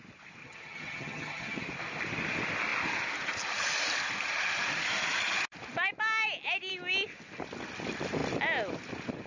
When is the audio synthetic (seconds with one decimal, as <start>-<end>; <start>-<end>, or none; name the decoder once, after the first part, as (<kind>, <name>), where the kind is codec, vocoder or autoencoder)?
0.4-1.6 (vocoder, HiFi-GAN)